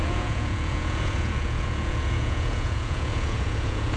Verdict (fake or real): fake